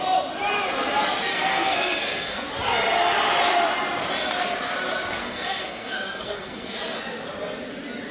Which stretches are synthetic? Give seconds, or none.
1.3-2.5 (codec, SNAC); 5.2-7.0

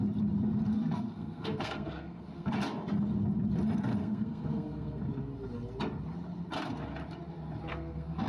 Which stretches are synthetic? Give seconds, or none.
0.7-2.5 (codec, SNAC); 4.0-5.0; 7.7-8.3

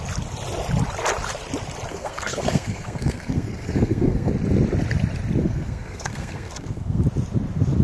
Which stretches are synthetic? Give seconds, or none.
1.9-4.3 (codec, SNAC); 5.4-7.0

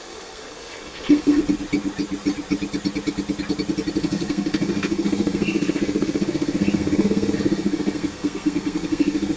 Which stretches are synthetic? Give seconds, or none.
0.0-1.4 (codec, SNAC); 4.0-9.4